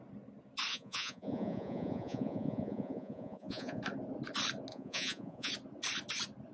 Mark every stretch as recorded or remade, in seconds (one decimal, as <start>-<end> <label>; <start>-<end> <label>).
0.0-0.7 recorded; 0.7-3.8 remade; 3.8-4.7 recorded; 4.7-5.5 remade; 5.5-6.5 recorded